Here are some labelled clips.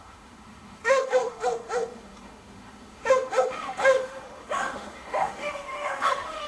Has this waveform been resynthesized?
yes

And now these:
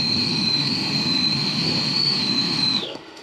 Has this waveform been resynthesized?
yes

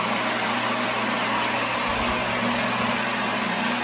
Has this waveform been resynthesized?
no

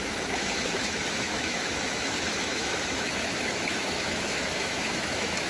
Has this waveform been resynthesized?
yes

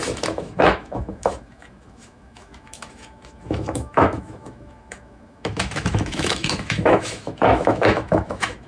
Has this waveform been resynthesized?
yes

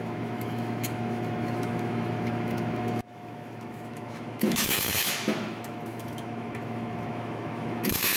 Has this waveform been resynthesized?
yes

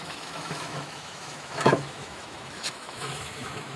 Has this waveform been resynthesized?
yes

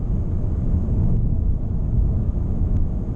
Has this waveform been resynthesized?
yes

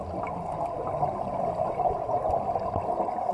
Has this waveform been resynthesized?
no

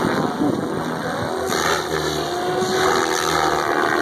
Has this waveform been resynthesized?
no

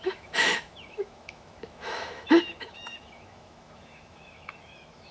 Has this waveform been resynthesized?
yes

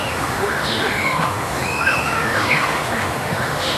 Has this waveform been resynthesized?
yes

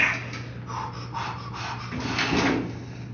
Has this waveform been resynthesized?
no